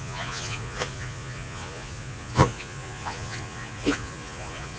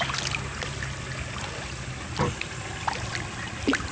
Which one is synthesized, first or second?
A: first